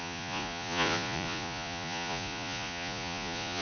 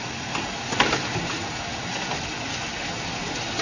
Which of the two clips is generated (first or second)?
first